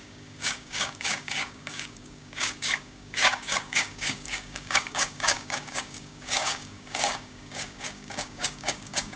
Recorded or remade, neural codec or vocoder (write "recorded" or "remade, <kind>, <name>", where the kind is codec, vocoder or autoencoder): remade, codec, DAC